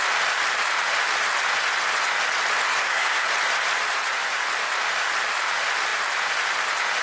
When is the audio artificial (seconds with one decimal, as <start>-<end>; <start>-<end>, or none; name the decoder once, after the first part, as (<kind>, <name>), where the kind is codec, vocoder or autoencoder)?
2.7-3.3 (codec, SNAC)